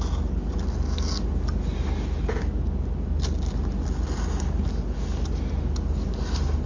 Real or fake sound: real